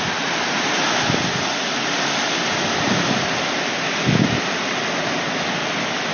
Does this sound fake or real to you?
real